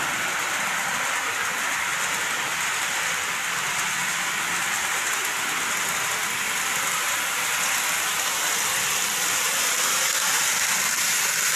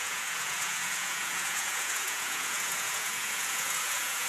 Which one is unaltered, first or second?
first